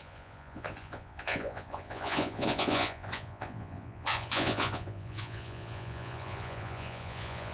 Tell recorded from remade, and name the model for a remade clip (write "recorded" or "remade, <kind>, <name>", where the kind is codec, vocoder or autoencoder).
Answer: remade, vocoder, Vocos